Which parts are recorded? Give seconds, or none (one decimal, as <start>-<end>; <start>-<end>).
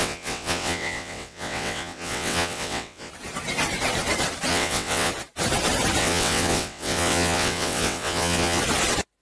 3.1-4.5; 5.1-6.0; 8.6-9.2